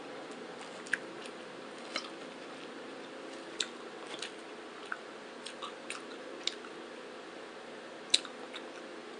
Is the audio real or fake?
real